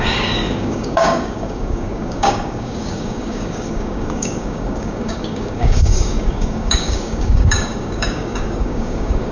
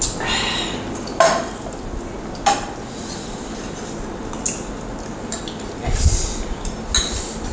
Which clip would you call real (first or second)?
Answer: second